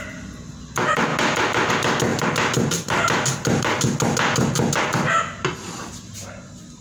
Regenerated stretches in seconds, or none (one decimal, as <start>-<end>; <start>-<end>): none